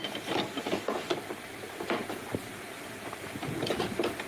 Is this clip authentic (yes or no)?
no